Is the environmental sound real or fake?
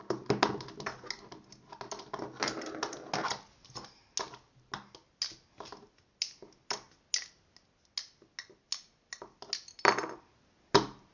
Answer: real